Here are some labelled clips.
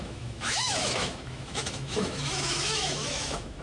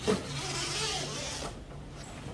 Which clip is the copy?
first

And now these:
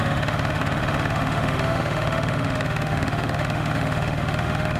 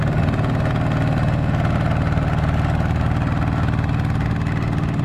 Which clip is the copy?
first